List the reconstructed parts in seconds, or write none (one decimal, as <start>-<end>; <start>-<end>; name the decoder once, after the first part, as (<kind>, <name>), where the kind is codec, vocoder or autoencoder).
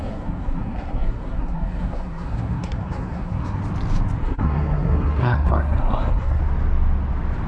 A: 0.0-3.6 (codec, SNAC); 4.2-6.4